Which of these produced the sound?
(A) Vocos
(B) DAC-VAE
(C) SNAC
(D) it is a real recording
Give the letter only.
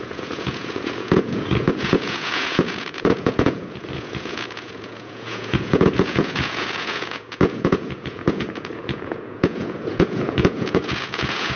A